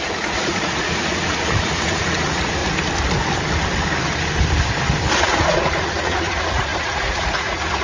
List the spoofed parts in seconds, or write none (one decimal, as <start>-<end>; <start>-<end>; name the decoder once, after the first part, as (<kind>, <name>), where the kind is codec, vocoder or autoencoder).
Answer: 0.0-2.6 (vocoder, Vocos); 5.2-7.8